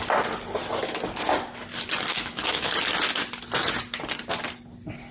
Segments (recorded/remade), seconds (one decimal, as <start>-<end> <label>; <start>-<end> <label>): 0.0-2.1 recorded; 2.1-2.7 remade; 2.7-5.1 recorded